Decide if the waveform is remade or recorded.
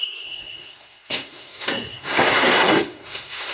remade